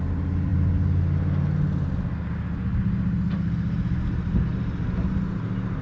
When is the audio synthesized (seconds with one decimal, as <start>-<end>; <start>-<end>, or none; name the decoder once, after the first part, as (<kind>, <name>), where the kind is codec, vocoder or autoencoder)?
none

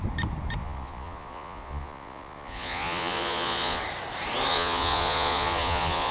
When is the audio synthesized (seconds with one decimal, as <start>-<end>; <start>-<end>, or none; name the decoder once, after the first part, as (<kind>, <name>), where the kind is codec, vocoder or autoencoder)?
0.6-3.8 (vocoder, Vocos); 4.5-6.1

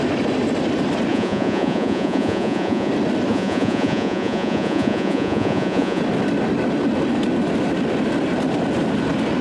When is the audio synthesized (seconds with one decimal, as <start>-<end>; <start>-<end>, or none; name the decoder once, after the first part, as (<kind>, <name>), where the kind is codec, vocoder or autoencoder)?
1.1-2.9 (vocoder, Vocos); 3.3-6.0

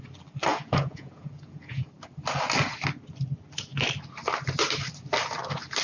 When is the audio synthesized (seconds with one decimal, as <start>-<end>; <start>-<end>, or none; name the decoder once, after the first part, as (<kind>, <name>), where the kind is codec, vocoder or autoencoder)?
0.5-1.9 (vocoder, Vocos)

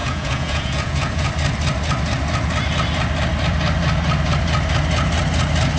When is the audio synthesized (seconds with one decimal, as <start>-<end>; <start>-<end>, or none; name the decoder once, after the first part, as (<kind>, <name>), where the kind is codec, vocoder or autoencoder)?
0.0-1.3 (vocoder, Vocos)